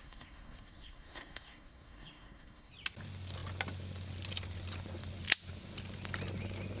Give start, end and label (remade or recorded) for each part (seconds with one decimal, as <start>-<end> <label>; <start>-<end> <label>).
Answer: 0.0-2.7 remade; 2.7-6.8 recorded